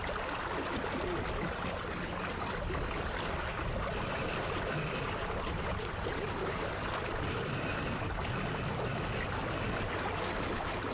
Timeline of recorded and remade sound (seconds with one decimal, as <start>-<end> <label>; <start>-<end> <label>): 0.0-10.9 recorded